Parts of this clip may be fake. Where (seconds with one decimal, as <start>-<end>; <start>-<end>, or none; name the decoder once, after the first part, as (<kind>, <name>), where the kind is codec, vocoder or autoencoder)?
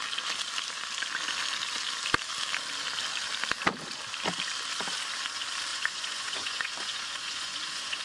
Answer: 5.7-8.0 (vocoder, Vocos)